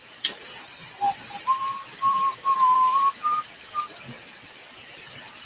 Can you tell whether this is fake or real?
fake